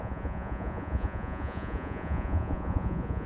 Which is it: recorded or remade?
remade